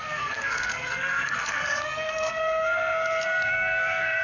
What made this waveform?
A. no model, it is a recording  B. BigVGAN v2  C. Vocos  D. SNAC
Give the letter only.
D